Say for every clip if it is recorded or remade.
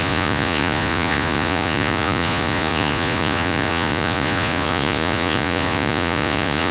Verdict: remade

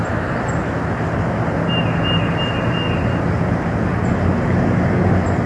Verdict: recorded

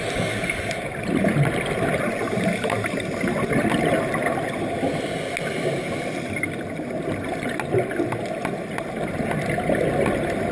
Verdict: recorded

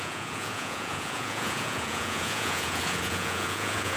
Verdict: remade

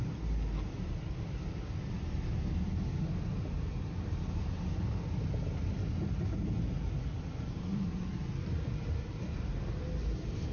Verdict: recorded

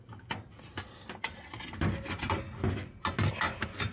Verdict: recorded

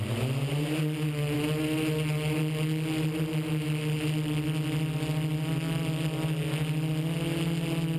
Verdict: recorded